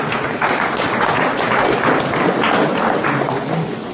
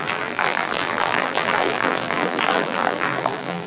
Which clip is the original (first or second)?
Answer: first